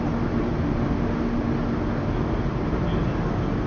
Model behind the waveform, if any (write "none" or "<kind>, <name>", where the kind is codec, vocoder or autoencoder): none